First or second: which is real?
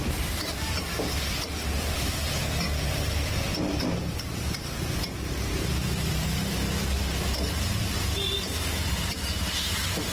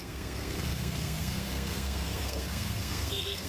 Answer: first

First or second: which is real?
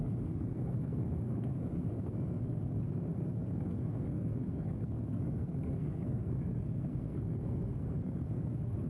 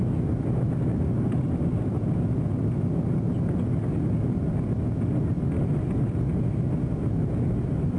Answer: second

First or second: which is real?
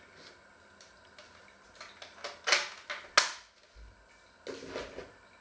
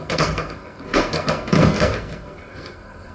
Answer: first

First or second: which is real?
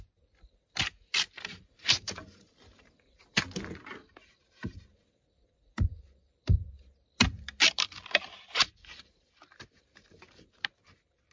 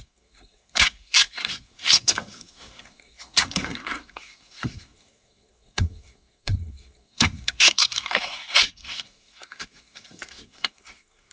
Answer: first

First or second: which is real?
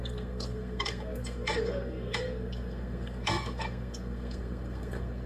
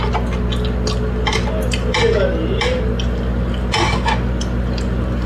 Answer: second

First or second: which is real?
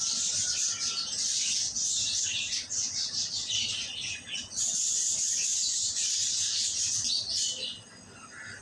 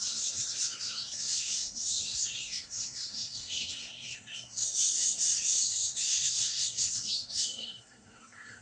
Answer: first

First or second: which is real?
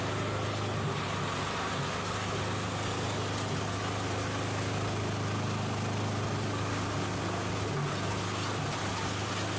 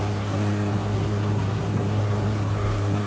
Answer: first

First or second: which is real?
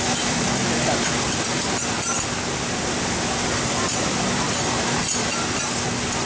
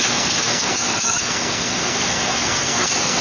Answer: first